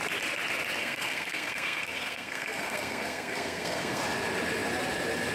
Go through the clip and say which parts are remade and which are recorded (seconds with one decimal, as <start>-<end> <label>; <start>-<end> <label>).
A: 0.0-0.8 recorded; 0.8-4.0 remade; 4.0-5.3 recorded